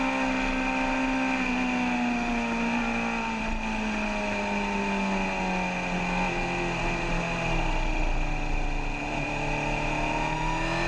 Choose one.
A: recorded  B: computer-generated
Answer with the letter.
A